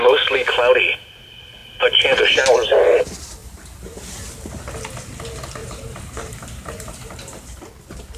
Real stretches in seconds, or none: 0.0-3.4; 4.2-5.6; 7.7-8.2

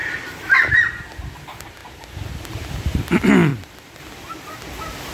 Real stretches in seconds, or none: 0.0-3.5; 4.0-5.1

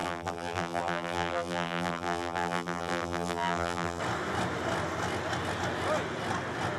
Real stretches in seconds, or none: 4.0-6.8

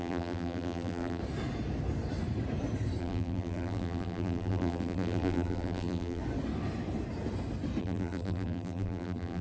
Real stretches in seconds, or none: 1.2-3.0; 6.2-7.8

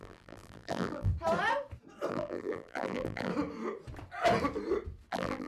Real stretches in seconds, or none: 1.1-2.1; 3.3-5.1

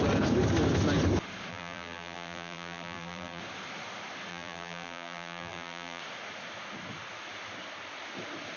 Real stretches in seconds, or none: 0.0-1.5; 3.4-4.3; 6.0-8.6

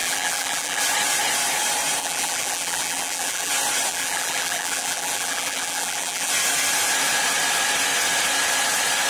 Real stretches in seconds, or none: 0.8-2.0; 3.5-3.9; 6.3-9.1